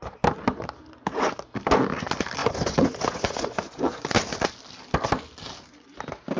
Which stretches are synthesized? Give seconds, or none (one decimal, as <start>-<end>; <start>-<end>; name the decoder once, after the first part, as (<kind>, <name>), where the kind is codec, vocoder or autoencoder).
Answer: 2.4-4.0 (vocoder, Vocos)

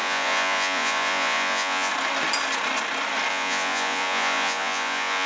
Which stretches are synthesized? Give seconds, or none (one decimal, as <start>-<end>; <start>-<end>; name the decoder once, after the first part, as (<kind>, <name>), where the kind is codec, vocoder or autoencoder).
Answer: 0.0-1.9 (vocoder, Vocos); 3.3-5.3

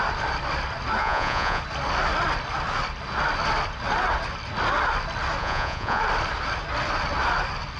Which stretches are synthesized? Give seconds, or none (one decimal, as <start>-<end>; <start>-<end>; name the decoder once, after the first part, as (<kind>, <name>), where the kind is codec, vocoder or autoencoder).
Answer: 1.0-1.6 (vocoder, Vocos); 5.4-6.0

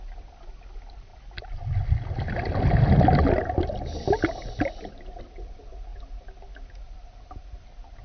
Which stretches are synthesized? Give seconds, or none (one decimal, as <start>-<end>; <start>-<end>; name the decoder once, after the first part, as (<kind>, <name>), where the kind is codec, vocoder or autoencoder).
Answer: none

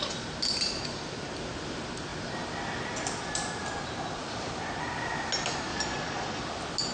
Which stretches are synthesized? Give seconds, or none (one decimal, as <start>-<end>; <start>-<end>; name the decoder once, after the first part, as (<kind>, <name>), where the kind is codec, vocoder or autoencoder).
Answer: 5.7-6.4 (vocoder, Vocos)

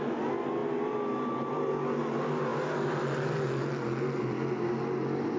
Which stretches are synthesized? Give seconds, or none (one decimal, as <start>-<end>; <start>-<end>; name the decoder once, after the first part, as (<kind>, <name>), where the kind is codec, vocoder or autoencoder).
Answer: none